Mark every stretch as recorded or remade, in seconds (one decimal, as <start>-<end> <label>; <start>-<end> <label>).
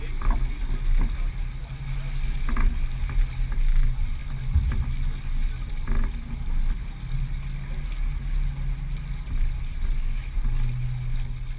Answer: 0.0-11.6 recorded